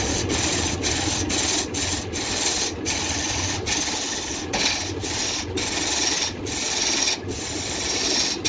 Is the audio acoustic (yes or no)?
yes